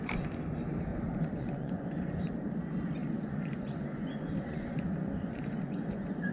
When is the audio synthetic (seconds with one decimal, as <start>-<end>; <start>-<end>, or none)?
0.9-2.1; 3.0-6.3